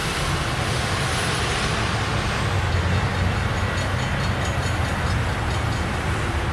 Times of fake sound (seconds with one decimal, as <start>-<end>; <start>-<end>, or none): none